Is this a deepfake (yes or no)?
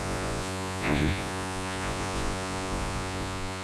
yes